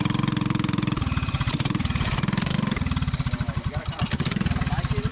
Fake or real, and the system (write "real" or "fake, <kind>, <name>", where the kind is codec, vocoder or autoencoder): fake, vocoder, BigVGAN v2